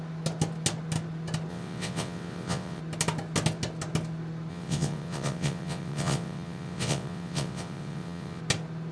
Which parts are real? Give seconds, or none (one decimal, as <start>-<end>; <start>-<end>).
0.0-1.5; 2.8-4.5; 8.4-8.9